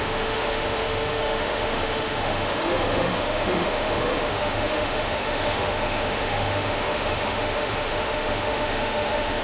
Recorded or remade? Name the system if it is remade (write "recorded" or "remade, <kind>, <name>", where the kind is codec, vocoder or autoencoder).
remade, autoencoder, DAC-VAE